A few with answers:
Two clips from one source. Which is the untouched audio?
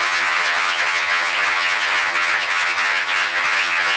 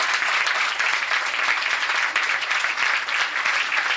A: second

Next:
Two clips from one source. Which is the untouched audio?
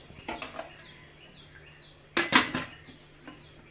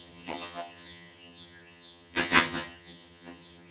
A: first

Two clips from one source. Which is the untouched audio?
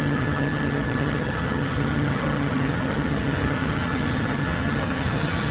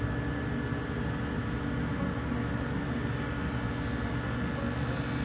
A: second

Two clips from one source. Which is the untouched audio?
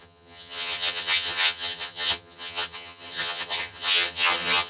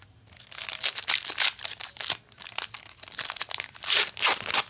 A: second